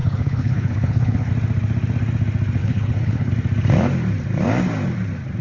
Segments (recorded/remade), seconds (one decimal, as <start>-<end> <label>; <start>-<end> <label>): 0.0-1.3 remade; 1.3-2.6 recorded; 2.6-3.3 remade; 3.3-5.4 recorded